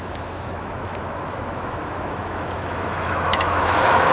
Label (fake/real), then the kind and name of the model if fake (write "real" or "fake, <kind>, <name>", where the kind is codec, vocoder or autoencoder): fake, autoencoder, DAC-VAE